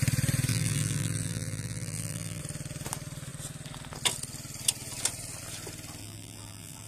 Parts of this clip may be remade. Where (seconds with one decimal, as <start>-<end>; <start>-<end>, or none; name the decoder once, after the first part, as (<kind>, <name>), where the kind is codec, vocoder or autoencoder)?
0.5-2.4 (vocoder, BigVGAN v2); 6.0-6.9